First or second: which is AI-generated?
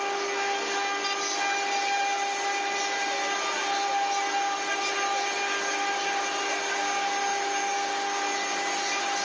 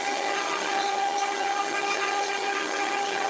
second